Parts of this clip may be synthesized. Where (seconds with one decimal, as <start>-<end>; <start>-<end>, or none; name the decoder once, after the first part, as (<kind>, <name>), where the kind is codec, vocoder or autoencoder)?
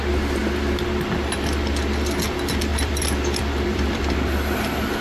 2.7-4.6 (vocoder, BigVGAN v2)